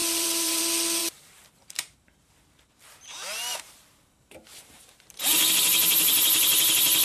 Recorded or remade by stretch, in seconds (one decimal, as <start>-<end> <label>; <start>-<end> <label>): 0.0-0.6 remade; 0.6-1.0 recorded; 1.0-2.3 remade; 2.3-3.5 recorded; 3.5-5.5 remade; 5.5-7.0 recorded